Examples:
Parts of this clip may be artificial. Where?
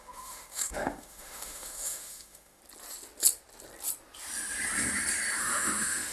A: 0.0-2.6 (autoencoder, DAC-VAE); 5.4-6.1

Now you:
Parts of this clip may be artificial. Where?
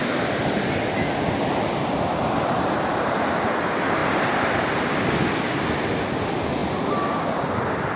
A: 4.0-4.7 (vocoder, BigVGAN v2)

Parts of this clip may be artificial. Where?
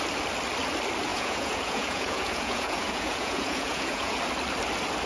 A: 1.1-4.2 (vocoder, Vocos)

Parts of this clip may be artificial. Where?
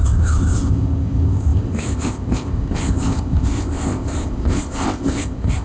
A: 0.0-5.6 (codec, ZipCodec)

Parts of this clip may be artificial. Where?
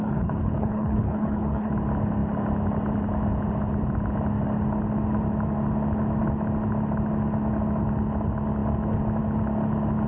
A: 0.0-1.7 (codec, HILCodec)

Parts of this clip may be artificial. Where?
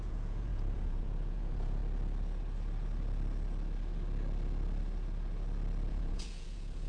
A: 0.0-1.8 (vocoder, Vocos); 5.9-6.9